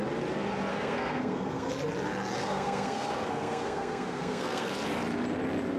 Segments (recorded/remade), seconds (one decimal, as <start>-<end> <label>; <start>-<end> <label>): 0.0-0.7 recorded; 0.7-1.7 remade; 1.7-2.4 recorded; 2.4-4.7 remade; 4.7-5.8 recorded